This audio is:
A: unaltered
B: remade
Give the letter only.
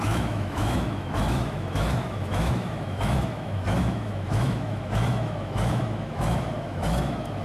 B